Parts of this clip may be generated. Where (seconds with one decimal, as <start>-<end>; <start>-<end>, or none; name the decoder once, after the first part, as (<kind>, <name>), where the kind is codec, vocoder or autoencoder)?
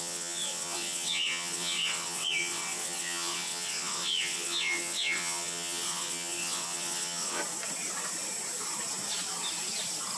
0.0-7.4 (vocoder, WaveNeXt)